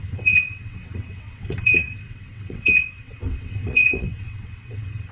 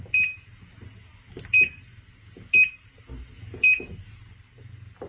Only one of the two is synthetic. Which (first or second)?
first